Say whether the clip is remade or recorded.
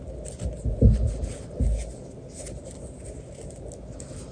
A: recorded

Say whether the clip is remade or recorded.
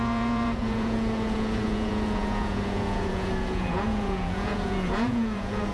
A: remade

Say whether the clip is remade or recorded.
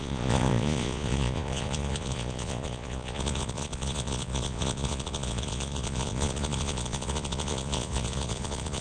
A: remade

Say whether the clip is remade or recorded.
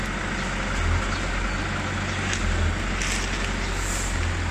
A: recorded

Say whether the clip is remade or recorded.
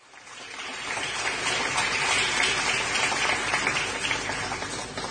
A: recorded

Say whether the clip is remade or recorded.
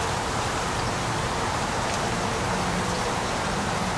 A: remade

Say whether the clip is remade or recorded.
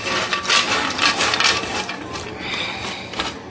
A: remade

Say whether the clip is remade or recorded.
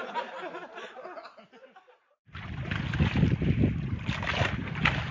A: recorded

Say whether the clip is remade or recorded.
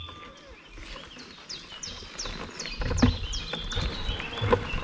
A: recorded